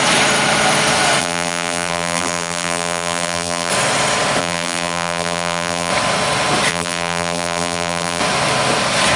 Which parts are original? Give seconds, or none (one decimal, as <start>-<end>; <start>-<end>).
0.0-1.2; 3.7-4.4; 5.9-6.7; 8.2-9.2

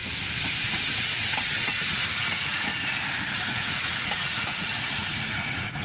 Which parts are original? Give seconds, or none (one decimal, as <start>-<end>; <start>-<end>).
0.0-0.6; 2.7-3.4

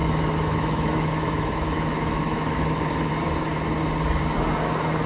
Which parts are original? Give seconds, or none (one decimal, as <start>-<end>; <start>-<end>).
3.1-5.1

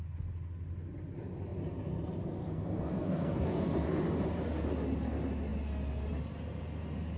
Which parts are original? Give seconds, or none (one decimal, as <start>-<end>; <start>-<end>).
0.0-2.4; 4.0-7.2

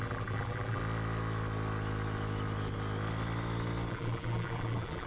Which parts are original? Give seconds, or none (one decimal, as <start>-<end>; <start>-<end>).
0.8-3.9